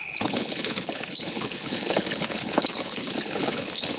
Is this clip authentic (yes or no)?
no